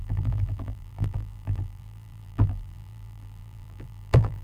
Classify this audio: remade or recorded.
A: remade